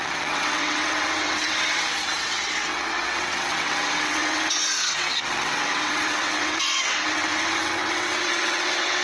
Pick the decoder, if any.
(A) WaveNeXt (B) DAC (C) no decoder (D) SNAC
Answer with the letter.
A